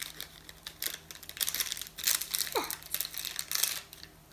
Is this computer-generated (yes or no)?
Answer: no